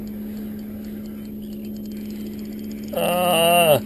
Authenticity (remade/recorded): recorded